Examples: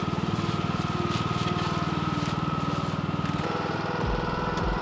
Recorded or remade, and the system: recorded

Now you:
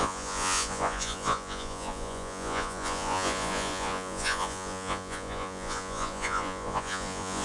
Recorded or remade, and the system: remade, vocoder, Vocos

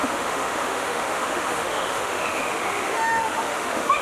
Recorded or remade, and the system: remade, autoencoder, DAC-VAE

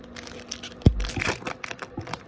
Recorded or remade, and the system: recorded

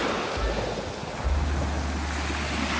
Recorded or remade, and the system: recorded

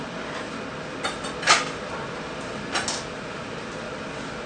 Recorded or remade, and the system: recorded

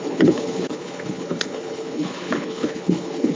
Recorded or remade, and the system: remade, codec, HILCodec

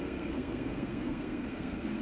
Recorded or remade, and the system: remade, codec, SNAC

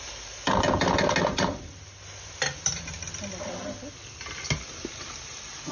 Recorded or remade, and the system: recorded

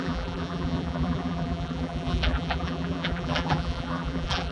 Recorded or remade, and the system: remade, vocoder, BigVGAN v2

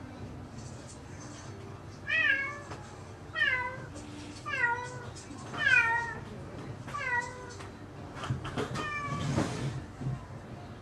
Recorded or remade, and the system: recorded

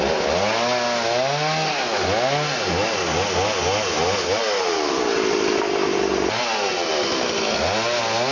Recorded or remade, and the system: recorded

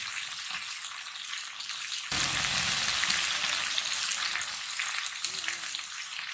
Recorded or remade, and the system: recorded